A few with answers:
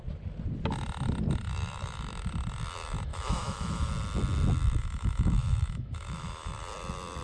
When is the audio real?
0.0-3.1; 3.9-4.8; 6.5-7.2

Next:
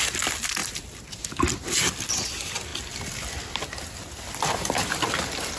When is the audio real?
0.0-5.6

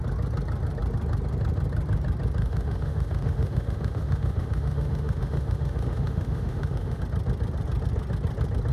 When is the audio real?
0.0-2.4; 7.0-8.7

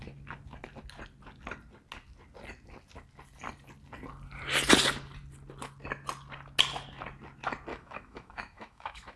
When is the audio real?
0.0-7.7

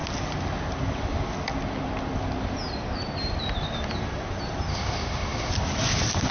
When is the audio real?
0.0-4.7; 5.5-6.3

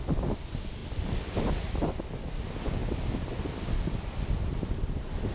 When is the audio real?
0.0-5.3

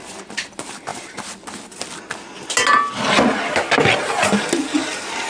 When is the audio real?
0.0-5.3

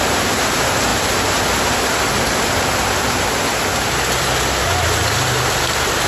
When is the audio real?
0.0-6.1